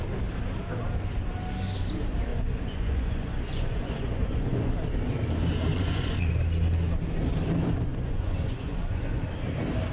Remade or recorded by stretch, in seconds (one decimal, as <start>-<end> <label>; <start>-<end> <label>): 0.0-2.3 recorded; 2.3-4.7 remade; 4.7-5.7 recorded; 5.7-6.3 remade; 6.3-7.9 recorded; 7.9-9.2 remade; 9.2-9.9 recorded